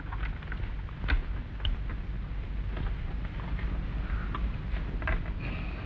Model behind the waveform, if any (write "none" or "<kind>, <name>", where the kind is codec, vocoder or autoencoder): none